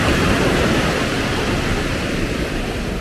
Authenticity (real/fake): real